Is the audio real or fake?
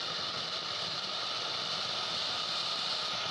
real